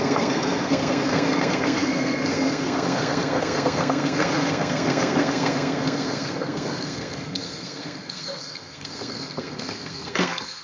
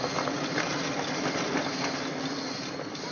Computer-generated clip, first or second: first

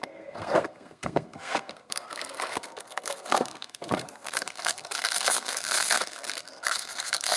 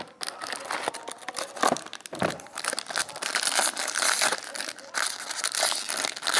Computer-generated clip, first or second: first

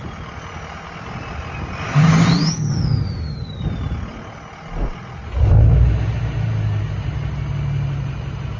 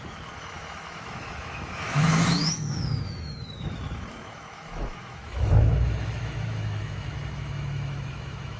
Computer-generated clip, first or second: second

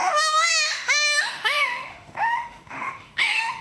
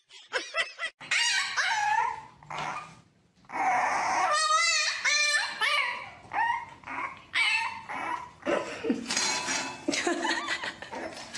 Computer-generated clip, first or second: first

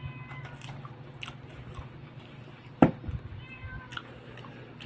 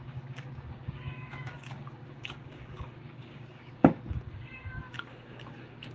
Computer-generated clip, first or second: second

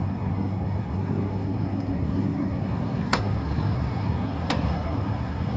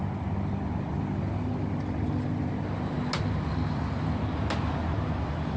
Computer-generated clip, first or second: first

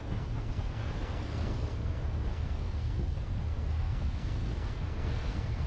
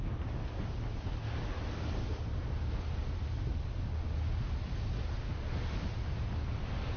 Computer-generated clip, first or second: first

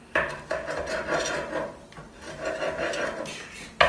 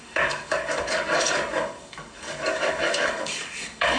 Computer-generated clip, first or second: second